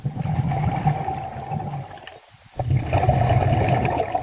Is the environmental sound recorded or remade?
recorded